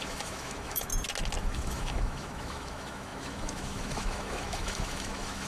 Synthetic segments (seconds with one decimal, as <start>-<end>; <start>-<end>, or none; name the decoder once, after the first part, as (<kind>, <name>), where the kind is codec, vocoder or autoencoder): 0.0-0.9 (autoencoder, DAC-VAE); 1.4-5.5